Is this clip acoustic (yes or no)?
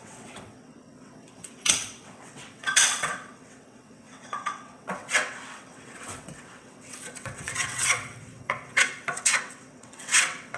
no